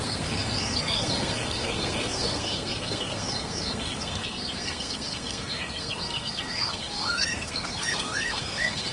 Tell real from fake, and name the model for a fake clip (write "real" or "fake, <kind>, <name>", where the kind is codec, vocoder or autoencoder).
fake, codec, SNAC